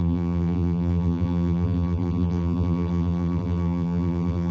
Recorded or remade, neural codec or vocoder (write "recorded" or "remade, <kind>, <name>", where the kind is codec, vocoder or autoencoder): remade, vocoder, BigVGAN v2